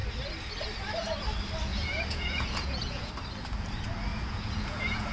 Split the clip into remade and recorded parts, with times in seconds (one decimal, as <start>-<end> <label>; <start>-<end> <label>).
0.0-1.7 recorded; 1.7-3.1 remade; 3.1-4.1 recorded; 4.1-5.1 remade